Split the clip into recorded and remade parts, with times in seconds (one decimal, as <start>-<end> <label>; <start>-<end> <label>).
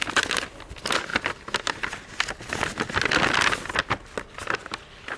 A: 0.0-5.2 recorded